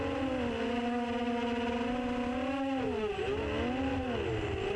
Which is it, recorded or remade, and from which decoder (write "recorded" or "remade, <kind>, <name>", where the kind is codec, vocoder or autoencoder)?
recorded